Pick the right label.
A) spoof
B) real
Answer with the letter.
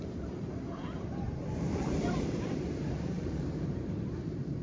A